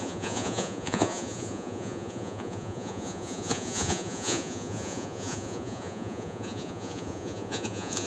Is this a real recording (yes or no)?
no